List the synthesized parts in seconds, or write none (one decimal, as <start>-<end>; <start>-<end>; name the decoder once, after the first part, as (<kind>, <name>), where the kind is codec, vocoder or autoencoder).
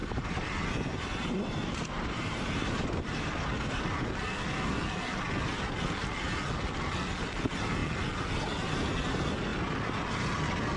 0.0-3.7 (vocoder, BigVGAN v2)